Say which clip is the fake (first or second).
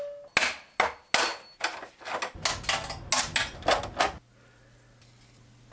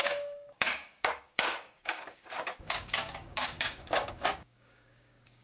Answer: second